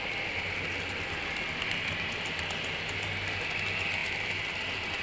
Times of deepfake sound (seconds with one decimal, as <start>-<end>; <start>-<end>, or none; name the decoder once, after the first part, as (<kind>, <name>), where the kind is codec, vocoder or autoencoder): none

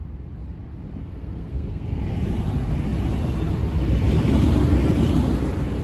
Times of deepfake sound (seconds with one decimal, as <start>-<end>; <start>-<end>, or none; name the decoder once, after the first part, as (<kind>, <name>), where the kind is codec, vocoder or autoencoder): 1.0-2.0 (codec, SNAC)

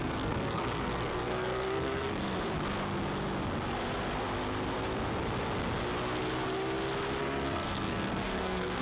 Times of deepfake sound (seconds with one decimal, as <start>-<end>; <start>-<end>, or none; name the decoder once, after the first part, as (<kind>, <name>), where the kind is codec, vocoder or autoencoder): 0.0-2.2 (codec, SNAC); 7.2-8.8